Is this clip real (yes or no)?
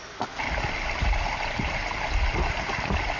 yes